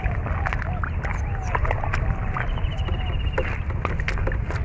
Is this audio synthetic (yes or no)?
no